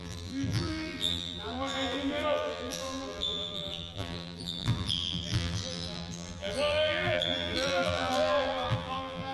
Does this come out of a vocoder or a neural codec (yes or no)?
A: yes